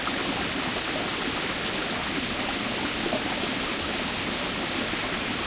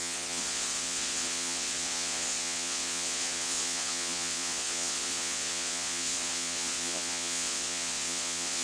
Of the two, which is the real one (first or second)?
first